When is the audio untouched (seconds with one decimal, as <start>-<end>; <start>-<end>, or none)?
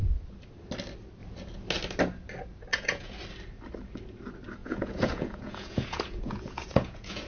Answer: 0.0-2.7; 3.2-4.6